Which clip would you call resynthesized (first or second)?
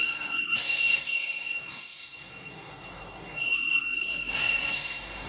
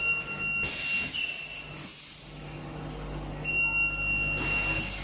first